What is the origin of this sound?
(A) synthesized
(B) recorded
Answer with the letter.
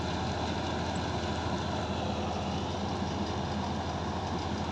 B